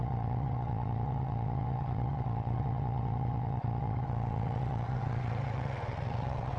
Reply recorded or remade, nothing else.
remade